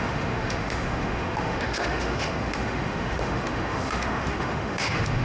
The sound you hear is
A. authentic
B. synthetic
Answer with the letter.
B